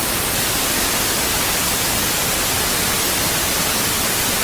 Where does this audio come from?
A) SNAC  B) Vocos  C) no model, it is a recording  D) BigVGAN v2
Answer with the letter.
C